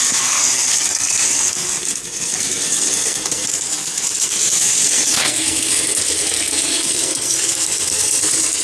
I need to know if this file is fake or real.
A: fake